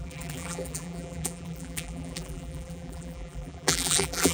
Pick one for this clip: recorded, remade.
remade